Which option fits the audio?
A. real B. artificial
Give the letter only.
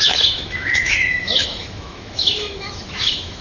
B